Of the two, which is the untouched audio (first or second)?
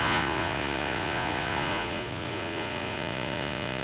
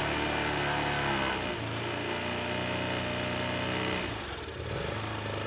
second